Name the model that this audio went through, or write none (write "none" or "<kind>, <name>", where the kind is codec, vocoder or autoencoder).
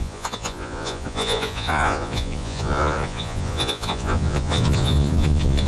vocoder, Vocos